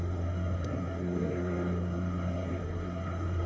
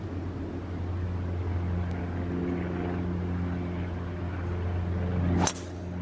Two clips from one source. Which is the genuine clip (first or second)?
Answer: second